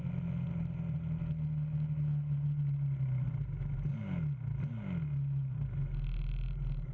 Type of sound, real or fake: real